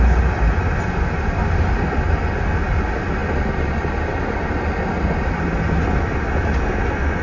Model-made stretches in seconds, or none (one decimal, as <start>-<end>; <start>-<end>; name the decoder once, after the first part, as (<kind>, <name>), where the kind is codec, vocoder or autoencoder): none